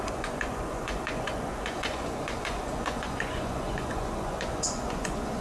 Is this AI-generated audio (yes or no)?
yes